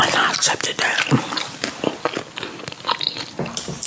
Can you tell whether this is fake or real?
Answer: real